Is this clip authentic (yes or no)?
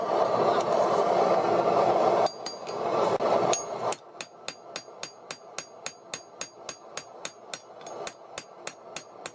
yes